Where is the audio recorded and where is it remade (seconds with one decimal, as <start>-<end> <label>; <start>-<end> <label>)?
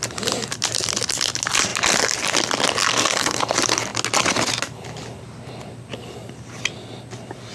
0.0-2.9 recorded; 2.9-3.4 remade; 3.4-7.5 recorded